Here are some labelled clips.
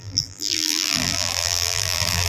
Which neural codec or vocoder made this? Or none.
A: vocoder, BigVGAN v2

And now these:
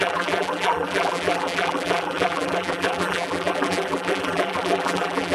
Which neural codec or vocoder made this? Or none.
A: vocoder, BigVGAN v2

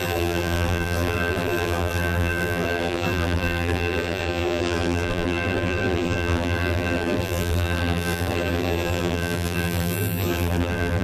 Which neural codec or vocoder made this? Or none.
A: vocoder, BigVGAN v2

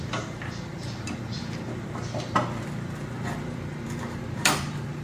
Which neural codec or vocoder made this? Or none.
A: vocoder, BigVGAN v2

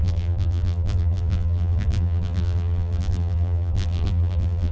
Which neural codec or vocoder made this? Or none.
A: vocoder, BigVGAN v2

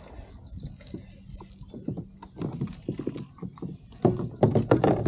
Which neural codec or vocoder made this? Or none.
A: none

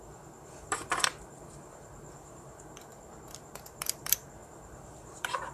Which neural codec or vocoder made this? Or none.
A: vocoder, BigVGAN v2